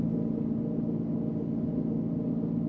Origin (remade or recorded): recorded